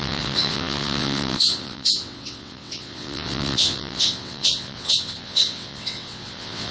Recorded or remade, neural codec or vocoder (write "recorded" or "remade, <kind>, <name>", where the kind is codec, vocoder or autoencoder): remade, vocoder, WaveNeXt